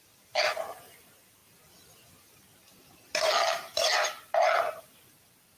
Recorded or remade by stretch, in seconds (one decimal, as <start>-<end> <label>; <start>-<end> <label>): 0.0-1.4 remade; 1.4-4.8 recorded; 4.8-5.6 remade